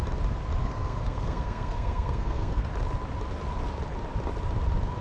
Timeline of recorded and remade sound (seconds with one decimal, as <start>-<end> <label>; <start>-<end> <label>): 0.0-0.6 recorded; 0.6-2.7 remade; 2.7-5.0 recorded